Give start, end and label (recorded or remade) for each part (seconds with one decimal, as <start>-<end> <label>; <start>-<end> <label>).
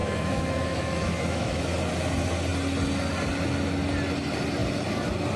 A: 0.0-1.6 remade; 1.6-5.4 recorded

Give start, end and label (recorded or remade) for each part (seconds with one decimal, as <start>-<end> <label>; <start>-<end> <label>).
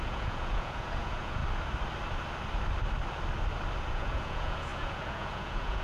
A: 0.0-1.4 remade; 1.4-3.9 recorded; 3.9-5.8 remade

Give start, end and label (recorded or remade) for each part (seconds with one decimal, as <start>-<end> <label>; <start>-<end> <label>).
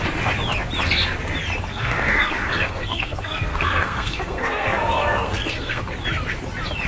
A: 0.0-1.7 recorded; 1.7-5.8 remade; 5.8-6.9 recorded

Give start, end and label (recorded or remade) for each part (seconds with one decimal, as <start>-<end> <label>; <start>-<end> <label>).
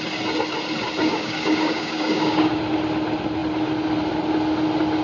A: 0.0-1.0 recorded; 1.0-2.6 remade; 2.6-5.0 recorded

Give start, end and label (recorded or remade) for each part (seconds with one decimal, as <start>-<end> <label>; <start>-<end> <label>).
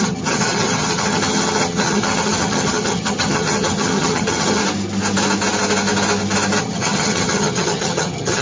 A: 0.0-4.6 remade; 4.6-6.6 recorded; 6.6-8.4 remade